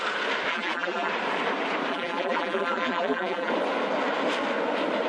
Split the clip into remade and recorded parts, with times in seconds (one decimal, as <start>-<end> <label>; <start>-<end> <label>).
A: 0.0-0.5 recorded; 0.5-1.1 remade; 1.1-1.9 recorded; 1.9-3.5 remade; 3.5-5.1 recorded